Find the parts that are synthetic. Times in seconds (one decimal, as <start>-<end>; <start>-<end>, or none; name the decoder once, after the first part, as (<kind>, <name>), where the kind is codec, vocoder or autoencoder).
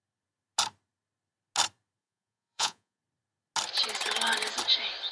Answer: 2.0-3.0 (vocoder, Vocos)